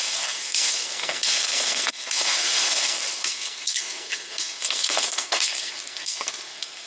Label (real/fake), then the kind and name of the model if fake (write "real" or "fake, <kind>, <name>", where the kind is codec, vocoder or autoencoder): fake, codec, SNAC